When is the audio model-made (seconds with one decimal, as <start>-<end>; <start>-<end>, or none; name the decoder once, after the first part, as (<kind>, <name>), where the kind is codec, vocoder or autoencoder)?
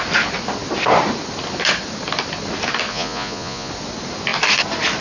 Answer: 2.9-3.7 (vocoder, Vocos)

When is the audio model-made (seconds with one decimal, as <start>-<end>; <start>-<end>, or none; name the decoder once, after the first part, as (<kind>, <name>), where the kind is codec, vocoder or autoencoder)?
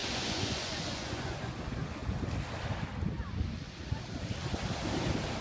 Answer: 0.0-1.5 (vocoder, Vocos)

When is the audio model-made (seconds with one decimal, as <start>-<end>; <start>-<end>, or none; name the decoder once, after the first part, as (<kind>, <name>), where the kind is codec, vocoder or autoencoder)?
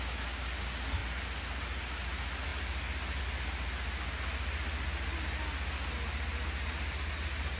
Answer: none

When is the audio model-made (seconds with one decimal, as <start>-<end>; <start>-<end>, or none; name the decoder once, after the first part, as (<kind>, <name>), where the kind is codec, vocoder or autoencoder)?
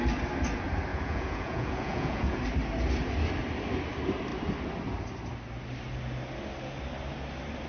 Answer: 0.9-2.4 (vocoder, Vocos)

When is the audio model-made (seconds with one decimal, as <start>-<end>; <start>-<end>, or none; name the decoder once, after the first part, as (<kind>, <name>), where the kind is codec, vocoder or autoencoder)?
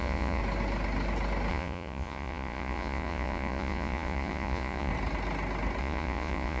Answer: 0.0-0.4 (vocoder, Vocos); 1.5-4.9; 5.8-6.6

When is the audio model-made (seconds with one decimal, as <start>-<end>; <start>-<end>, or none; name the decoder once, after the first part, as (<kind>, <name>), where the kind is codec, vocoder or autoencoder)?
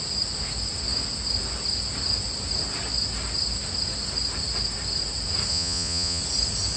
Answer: 5.5-6.2 (vocoder, Vocos)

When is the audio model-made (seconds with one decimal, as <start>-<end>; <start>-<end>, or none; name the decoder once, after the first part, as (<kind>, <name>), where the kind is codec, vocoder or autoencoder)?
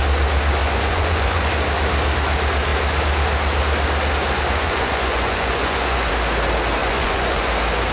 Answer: 0.6-1.5 (vocoder, Vocos); 4.5-6.1; 6.8-7.5